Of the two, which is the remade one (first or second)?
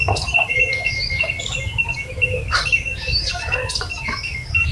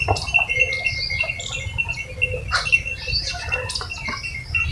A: first